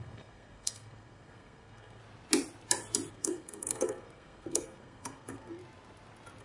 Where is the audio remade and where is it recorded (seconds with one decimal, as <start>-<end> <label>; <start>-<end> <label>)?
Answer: 0.0-2.0 remade; 2.0-3.1 recorded; 3.1-5.6 remade; 5.6-6.4 recorded